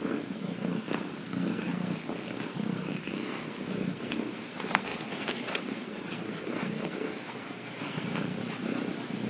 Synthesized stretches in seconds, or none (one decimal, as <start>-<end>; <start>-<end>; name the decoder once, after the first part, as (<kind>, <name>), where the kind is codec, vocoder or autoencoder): 0.0-8.4 (codec, SNAC)